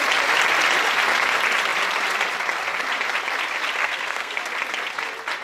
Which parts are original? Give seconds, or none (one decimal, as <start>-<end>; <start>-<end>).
0.0-3.8; 4.4-5.4